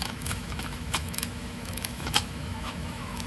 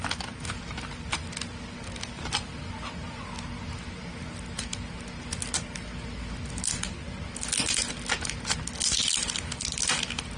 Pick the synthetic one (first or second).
first